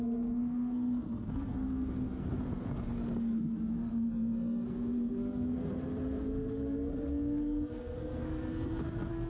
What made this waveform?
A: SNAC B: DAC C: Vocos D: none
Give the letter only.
A